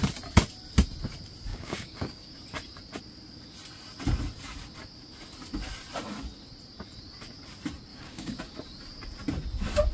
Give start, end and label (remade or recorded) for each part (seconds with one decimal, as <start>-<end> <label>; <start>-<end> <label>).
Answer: 0.0-1.5 recorded; 1.5-2.4 remade; 2.4-7.9 recorded; 7.9-8.4 remade; 8.4-9.9 recorded